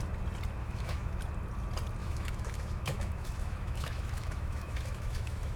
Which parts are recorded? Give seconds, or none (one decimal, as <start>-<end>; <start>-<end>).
0.0-0.6; 1.2-2.0